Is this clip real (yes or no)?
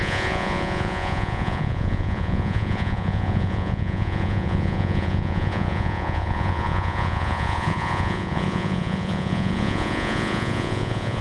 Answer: no